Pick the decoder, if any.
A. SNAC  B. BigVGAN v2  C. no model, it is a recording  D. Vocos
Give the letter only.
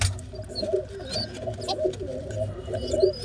C